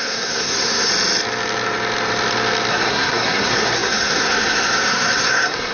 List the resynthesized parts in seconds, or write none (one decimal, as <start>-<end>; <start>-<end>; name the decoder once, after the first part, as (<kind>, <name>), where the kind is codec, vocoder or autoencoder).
0.0-0.9 (codec, SNAC); 2.7-5.7